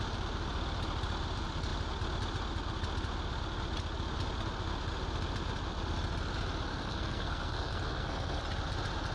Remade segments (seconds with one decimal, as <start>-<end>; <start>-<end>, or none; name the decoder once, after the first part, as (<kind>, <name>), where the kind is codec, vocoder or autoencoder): 6.7-8.4 (codec, SNAC)

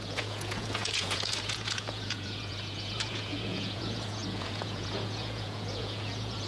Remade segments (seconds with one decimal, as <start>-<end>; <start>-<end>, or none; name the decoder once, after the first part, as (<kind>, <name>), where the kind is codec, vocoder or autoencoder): 0.0-6.5 (vocoder, Vocos)

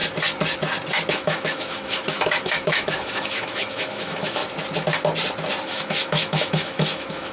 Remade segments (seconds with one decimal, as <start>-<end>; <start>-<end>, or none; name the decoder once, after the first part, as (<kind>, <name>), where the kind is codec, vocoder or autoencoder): 1.1-4.4 (autoencoder, DAC-VAE); 5.6-7.3

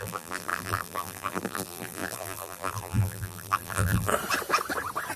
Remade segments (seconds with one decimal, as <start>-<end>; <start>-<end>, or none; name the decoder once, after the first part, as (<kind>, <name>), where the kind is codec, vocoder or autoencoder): 0.0-4.1 (vocoder, BigVGAN v2)

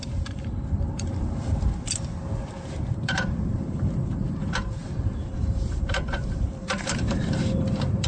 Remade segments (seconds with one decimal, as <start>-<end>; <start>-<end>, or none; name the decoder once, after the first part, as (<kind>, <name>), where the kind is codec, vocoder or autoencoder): 0.0-1.5 (vocoder, BigVGAN v2); 2.9-8.1

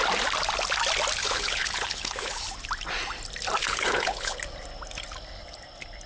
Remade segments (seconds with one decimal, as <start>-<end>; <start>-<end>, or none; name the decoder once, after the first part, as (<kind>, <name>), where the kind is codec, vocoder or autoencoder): 1.2-2.4 (codec, HILCodec); 3.6-4.4

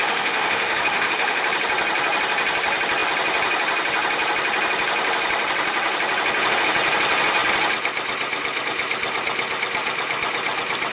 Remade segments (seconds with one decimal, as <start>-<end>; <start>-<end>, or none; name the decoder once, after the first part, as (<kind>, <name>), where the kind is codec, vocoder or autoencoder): 0.0-1.4 (autoencoder, DAC-VAE)

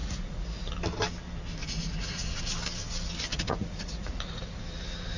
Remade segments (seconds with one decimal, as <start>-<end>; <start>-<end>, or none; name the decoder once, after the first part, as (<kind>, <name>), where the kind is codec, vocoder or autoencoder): 0.0-0.7 (vocoder, Vocos); 1.6-2.4; 3.3-4.6